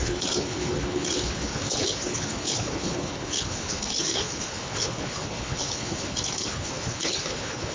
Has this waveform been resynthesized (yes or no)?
yes